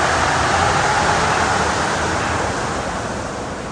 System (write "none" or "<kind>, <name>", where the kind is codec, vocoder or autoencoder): none